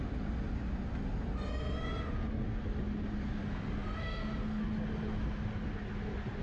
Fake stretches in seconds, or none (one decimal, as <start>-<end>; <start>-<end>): 4.0-4.6